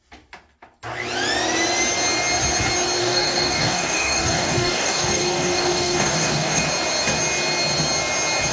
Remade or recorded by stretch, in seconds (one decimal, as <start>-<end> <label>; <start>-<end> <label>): 0.0-3.0 recorded; 3.0-6.6 remade; 6.6-8.5 recorded